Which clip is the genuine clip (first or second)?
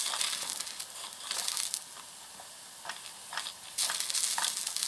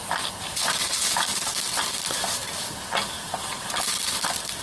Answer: first